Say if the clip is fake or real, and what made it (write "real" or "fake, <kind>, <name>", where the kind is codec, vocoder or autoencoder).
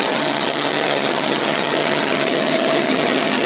fake, vocoder, HiFi-GAN